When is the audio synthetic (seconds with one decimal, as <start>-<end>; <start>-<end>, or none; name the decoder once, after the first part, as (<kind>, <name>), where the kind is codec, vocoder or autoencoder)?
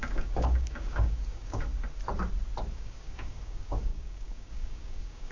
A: 0.0-1.7 (codec, DAC); 2.7-5.3